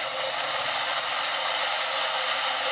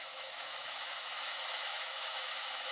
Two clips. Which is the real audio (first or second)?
first